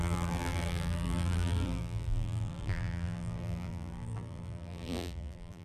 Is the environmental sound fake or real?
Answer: fake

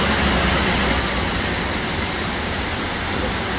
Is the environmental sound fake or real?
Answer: real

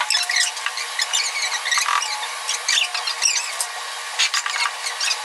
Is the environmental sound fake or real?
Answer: real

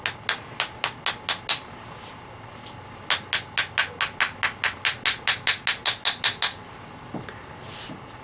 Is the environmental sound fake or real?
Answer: real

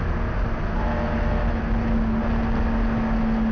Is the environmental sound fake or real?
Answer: real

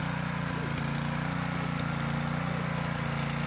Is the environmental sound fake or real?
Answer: real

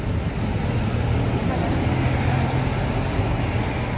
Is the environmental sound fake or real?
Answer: real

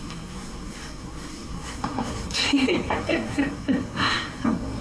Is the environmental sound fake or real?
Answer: fake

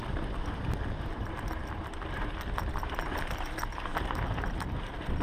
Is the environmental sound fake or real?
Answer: real